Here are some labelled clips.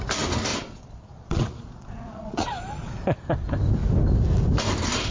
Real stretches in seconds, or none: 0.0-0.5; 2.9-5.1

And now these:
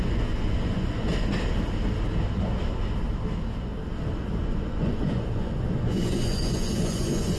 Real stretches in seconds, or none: 1.1-4.4

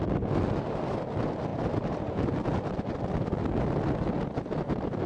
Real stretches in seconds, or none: 0.0-5.1

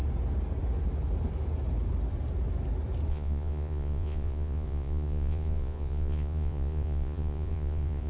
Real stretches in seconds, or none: 0.0-3.1

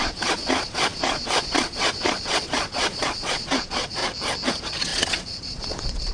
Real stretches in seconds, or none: 4.0-4.5